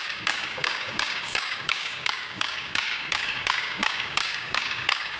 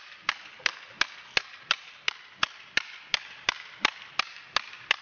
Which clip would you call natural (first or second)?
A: second